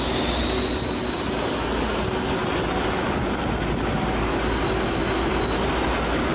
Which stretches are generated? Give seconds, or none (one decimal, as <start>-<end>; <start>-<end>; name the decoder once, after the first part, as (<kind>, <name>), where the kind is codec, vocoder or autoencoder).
none